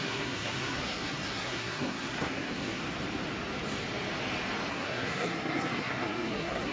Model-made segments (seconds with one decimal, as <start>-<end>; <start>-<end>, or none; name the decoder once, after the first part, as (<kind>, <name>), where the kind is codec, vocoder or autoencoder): 0.0-2.8 (codec, SNAC); 4.7-6.7